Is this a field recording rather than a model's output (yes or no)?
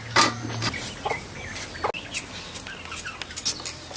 yes